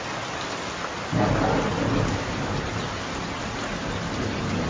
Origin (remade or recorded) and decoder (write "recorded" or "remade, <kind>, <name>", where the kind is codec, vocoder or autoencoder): recorded